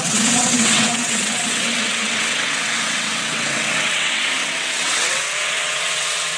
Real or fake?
fake